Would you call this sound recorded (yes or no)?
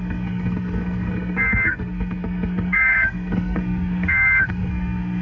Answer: no